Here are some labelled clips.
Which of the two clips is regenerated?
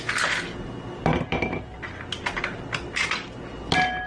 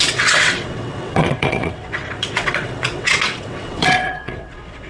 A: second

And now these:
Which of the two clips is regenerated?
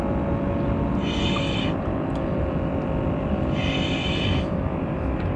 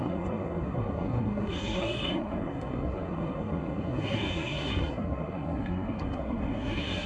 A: second